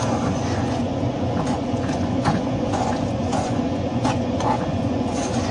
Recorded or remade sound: remade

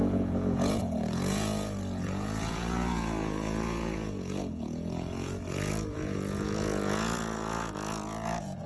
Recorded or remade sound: remade